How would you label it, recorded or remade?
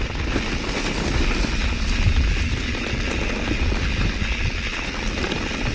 recorded